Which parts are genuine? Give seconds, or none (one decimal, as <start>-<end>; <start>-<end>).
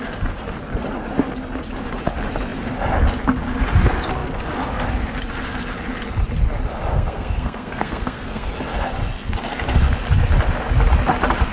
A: 0.0-6.9; 8.5-11.5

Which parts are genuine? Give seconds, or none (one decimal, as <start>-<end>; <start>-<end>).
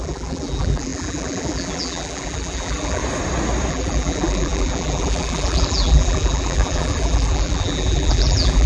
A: 3.0-3.7